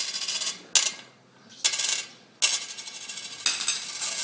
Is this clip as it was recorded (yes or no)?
yes